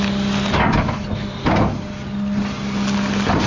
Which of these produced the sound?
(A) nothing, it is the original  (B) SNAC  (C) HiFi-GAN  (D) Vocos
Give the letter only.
A